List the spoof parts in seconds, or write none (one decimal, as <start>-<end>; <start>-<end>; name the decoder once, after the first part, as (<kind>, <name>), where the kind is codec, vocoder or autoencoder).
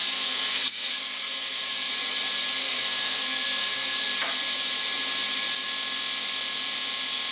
0.0-1.9 (codec, SNAC); 2.6-4.1